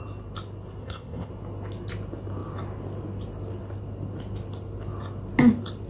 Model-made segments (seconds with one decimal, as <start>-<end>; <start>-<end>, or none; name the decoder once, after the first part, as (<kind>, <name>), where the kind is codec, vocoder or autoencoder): 0.8-1.3 (codec, ZipCodec)